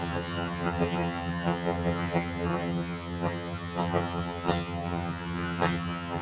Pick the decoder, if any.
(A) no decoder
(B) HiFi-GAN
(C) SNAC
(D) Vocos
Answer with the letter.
B